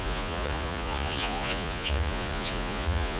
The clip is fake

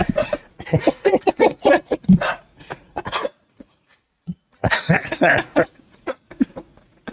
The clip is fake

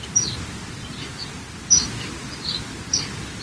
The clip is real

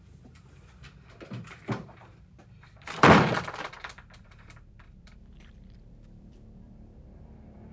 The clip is fake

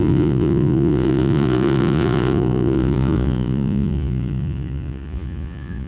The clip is fake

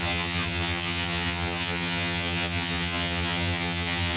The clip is fake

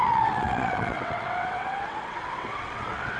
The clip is fake